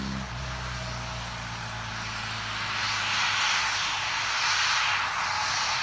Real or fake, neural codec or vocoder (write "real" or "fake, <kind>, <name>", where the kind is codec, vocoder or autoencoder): real